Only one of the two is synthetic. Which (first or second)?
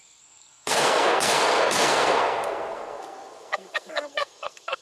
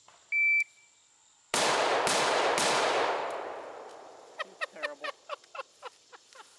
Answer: first